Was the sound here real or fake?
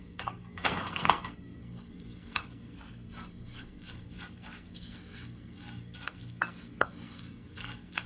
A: fake